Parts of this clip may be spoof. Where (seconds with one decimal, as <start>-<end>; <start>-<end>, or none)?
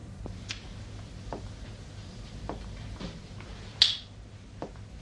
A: none